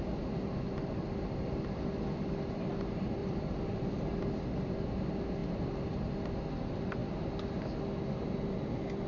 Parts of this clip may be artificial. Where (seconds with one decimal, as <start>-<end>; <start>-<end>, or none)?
3.2-5.0